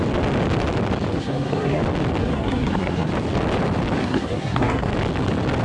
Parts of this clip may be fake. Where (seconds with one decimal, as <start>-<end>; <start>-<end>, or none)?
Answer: 1.1-1.8; 2.2-3.1; 4.0-4.9